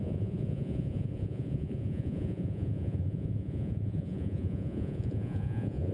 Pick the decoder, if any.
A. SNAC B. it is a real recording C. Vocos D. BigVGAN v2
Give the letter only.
C